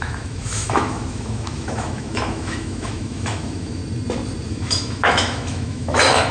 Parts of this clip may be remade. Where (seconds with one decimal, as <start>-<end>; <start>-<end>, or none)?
0.0-3.8; 4.5-6.3